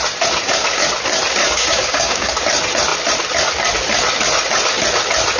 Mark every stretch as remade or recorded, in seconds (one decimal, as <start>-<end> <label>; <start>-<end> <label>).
0.0-1.4 recorded; 1.4-2.3 remade; 2.3-5.4 recorded